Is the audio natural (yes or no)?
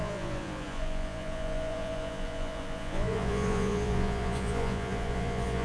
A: no